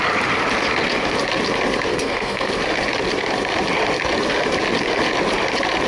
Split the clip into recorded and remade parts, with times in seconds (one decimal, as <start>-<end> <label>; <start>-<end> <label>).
0.0-1.9 recorded; 1.9-2.5 remade; 2.5-5.9 recorded